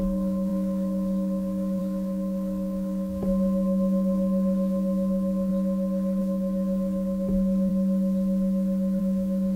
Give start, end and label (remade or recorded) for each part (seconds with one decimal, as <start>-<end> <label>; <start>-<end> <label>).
0.0-5.5 remade; 5.5-6.2 recorded; 6.2-7.7 remade; 7.7-9.0 recorded; 9.0-9.6 remade